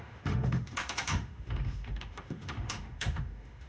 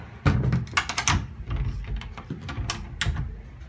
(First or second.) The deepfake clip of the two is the first